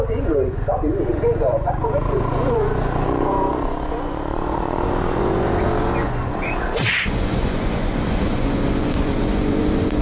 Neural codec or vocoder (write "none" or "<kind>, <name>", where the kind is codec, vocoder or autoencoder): vocoder, Vocos